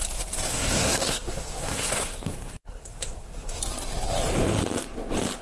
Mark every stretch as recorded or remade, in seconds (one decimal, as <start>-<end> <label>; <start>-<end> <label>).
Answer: 0.0-0.5 recorded; 0.5-3.6 remade; 3.6-5.4 recorded